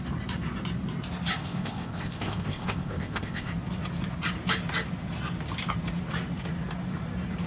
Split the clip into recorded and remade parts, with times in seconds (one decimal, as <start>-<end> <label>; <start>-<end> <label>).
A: 0.0-1.4 recorded; 1.4-3.5 remade; 3.5-7.5 recorded